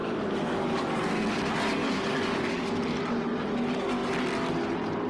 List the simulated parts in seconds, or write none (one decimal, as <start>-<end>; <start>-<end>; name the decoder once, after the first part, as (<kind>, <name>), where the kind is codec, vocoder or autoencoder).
0.0-1.0 (codec, DAC); 1.8-2.7